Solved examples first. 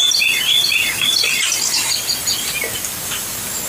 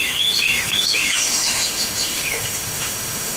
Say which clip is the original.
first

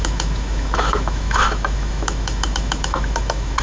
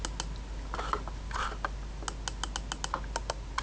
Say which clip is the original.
second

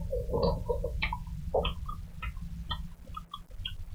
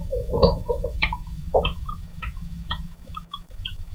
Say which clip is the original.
first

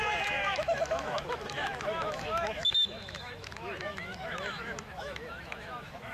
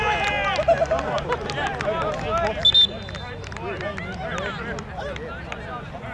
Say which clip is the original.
second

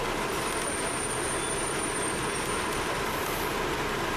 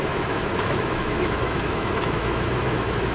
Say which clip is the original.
first